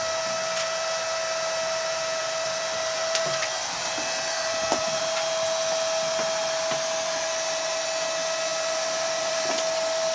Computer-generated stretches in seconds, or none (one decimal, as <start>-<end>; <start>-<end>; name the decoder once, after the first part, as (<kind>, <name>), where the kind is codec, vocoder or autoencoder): 2.2-5.0 (vocoder, BigVGAN v2); 8.5-9.5